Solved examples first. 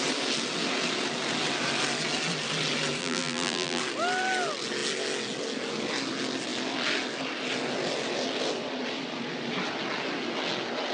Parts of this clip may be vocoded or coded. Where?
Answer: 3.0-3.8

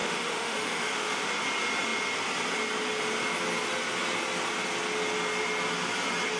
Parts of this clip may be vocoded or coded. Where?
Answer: 0.0-1.3

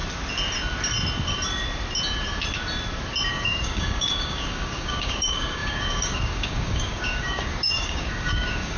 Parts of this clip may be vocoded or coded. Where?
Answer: 3.3-8.8

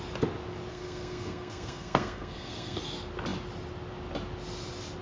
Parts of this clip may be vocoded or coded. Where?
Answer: 0.7-2.8

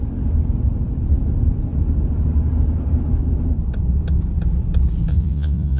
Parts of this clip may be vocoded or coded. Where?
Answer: 5.1-5.8

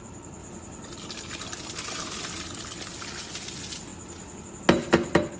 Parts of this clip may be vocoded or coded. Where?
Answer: none

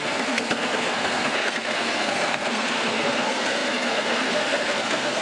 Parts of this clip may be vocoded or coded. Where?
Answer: 0.0-5.2

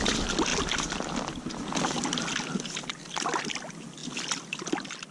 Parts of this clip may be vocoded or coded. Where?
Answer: none